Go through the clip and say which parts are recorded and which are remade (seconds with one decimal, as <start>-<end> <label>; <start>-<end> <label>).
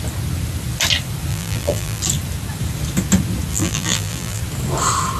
0.0-1.3 recorded; 1.3-2.0 remade; 2.0-3.5 recorded; 3.5-4.4 remade; 4.4-5.2 recorded